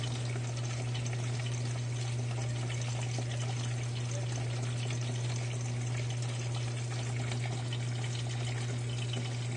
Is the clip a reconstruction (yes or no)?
no